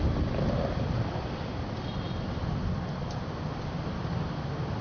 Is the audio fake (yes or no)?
no